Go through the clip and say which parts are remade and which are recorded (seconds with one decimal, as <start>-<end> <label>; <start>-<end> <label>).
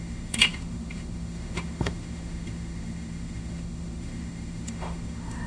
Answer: 0.0-5.5 remade